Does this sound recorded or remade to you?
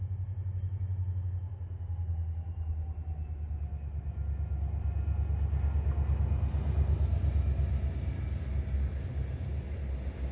recorded